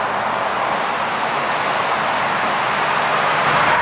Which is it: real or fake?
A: real